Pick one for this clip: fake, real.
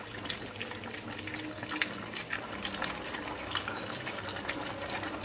real